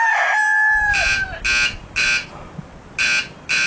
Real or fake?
real